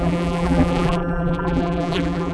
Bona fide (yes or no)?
no